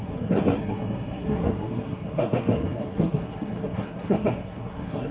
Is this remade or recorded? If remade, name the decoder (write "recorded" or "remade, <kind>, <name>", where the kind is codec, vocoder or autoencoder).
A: remade, codec, SNAC